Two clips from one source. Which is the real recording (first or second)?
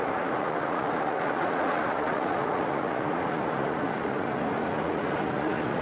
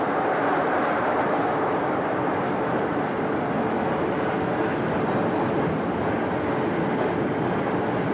second